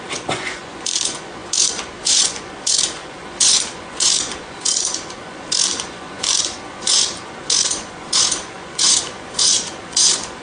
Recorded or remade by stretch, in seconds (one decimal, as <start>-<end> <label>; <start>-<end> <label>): 0.0-10.4 remade